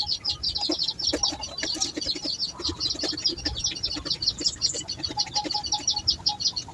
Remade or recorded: recorded